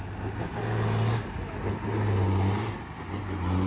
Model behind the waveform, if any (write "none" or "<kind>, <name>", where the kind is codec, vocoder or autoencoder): none